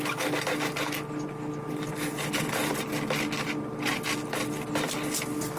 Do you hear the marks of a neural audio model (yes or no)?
no